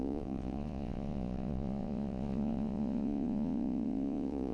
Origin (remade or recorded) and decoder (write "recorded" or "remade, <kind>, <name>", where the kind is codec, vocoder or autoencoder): remade, vocoder, Vocos